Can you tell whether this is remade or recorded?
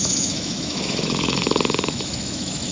remade